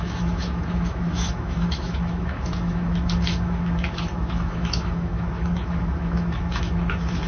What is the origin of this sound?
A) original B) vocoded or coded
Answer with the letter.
B